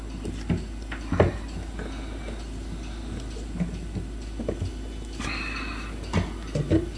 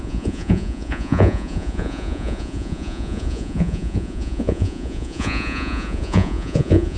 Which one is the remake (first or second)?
second